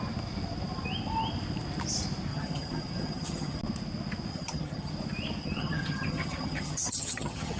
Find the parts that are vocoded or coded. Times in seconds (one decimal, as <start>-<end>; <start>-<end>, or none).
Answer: 2.3-3.6; 4.3-4.9; 5.4-7.6